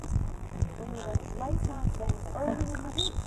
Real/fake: fake